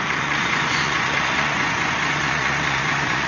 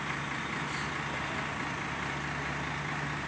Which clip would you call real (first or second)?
second